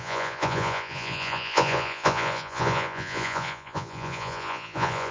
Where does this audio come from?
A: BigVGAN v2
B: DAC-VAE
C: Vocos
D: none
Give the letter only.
C